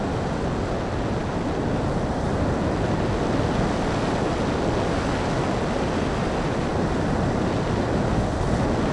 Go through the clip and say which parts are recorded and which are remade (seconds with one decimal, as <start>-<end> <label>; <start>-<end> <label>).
0.0-8.9 recorded

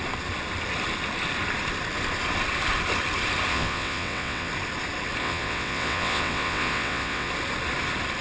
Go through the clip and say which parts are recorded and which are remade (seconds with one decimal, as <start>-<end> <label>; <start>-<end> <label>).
0.0-3.5 recorded; 3.5-4.5 remade; 4.5-5.2 recorded; 5.2-7.3 remade; 7.3-8.2 recorded